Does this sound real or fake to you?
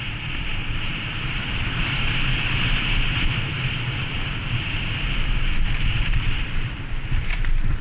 fake